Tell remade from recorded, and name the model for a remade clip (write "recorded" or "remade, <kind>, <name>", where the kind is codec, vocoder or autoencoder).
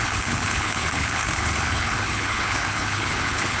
remade, codec, HILCodec